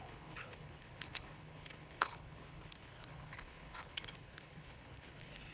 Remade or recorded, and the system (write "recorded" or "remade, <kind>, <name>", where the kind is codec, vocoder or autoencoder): remade, codec, HILCodec